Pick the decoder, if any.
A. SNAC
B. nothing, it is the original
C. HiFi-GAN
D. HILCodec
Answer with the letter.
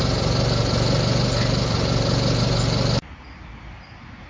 B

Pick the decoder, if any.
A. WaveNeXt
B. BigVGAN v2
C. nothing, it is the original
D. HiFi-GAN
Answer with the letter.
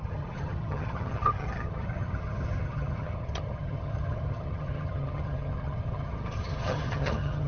D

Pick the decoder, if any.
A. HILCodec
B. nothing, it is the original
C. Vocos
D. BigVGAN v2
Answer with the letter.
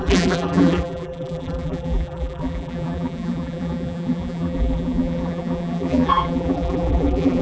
D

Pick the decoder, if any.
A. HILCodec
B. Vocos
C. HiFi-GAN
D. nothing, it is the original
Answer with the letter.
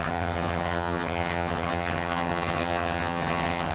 C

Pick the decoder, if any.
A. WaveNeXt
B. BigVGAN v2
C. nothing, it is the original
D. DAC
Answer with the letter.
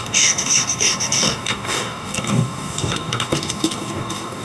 D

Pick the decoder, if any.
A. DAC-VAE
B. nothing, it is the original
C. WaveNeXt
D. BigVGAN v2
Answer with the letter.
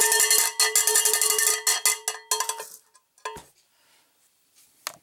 B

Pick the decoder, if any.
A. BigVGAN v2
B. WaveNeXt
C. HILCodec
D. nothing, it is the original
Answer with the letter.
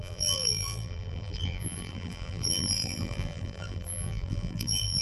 A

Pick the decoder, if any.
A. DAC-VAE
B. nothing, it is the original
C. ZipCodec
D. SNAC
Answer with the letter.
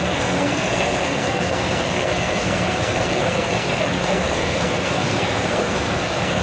D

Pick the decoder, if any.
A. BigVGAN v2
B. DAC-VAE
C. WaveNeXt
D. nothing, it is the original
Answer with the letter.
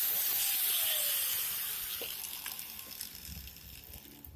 D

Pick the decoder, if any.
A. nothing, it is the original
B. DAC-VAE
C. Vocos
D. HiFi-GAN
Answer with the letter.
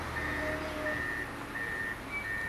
A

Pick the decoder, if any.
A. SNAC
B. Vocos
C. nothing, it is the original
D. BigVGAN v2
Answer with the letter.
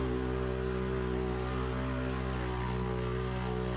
C